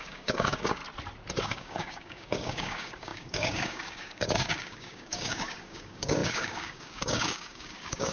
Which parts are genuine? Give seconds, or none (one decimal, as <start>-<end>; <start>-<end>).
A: 0.8-1.4